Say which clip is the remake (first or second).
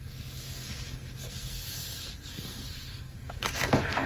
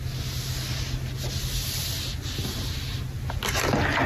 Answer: first